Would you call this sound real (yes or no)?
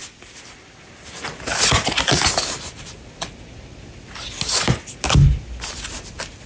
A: yes